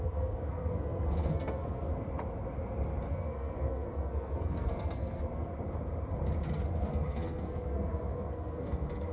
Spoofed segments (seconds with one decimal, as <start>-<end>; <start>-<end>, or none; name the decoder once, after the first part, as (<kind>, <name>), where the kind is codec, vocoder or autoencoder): 0.0-1.9 (codec, SNAC); 3.1-5.5; 6.5-9.1